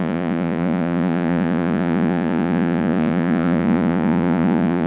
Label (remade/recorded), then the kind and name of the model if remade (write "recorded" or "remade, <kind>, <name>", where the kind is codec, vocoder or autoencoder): remade, vocoder, Vocos